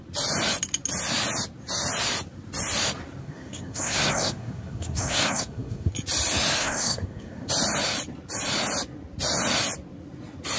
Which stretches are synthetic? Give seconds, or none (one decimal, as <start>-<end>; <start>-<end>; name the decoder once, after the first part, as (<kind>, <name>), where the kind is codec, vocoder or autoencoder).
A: 3.2-5.9 (codec, SNAC); 6.6-7.5